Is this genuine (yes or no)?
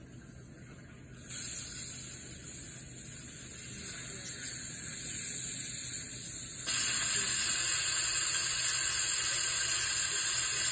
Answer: yes